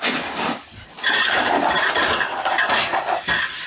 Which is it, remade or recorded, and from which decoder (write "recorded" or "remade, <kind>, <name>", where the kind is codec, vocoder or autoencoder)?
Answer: recorded